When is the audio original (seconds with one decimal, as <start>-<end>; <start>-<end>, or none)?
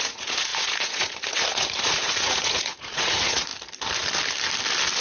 3.5-5.0